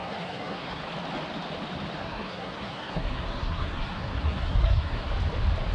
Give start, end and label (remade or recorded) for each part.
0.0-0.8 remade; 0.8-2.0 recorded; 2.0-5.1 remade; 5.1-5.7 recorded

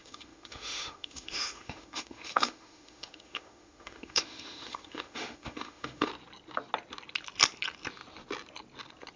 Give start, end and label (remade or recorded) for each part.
0.0-6.1 remade; 6.1-9.2 recorded

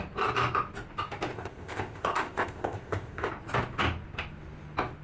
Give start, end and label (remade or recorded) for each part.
0.0-1.3 recorded; 1.3-3.3 remade; 3.3-5.0 recorded

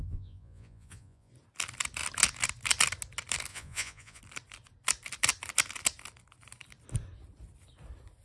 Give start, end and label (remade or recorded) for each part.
0.0-1.3 remade; 1.3-3.5 recorded; 3.5-4.2 remade; 4.2-8.2 recorded

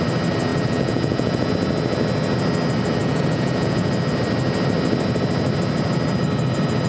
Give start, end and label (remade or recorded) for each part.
0.0-0.5 recorded; 0.5-1.5 remade; 1.5-3.0 recorded; 3.0-3.9 remade; 3.9-6.9 recorded

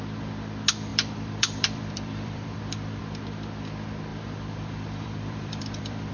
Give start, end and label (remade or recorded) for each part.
0.0-0.9 recorded; 0.9-3.0 remade; 3.0-4.1 recorded; 4.1-6.1 remade

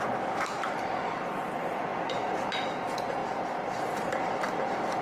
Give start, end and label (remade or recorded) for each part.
0.0-3.2 remade; 3.2-3.8 recorded; 3.8-5.0 remade